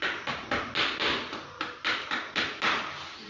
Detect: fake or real real